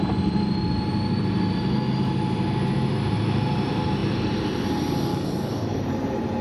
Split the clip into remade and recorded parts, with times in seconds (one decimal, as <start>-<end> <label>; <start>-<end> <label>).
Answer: 0.0-5.1 recorded; 5.1-5.8 remade; 5.8-6.4 recorded